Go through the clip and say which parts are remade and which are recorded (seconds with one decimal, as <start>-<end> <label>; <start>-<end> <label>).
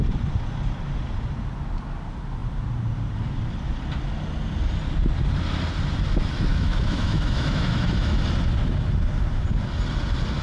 0.0-6.5 recorded; 6.5-8.2 remade; 8.2-10.4 recorded